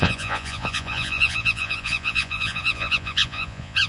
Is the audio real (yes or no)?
no